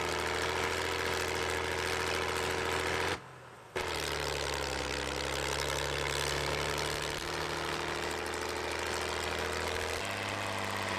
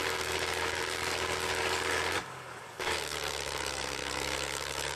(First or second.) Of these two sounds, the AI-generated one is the second